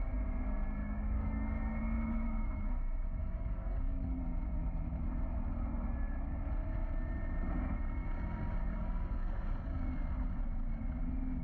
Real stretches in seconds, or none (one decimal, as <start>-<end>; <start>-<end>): 0.0-0.8; 1.8-3.2; 4.2-8.6; 9.8-11.4